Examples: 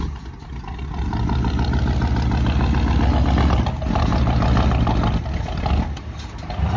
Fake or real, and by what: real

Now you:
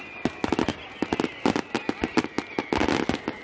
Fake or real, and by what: real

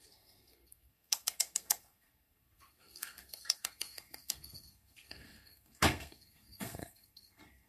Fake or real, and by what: fake, codec, SNAC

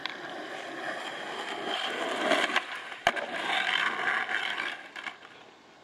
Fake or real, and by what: real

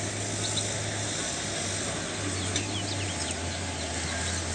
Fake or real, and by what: real